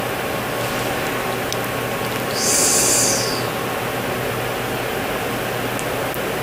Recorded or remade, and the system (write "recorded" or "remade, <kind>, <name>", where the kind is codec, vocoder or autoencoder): recorded